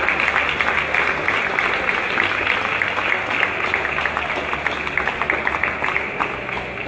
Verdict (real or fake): real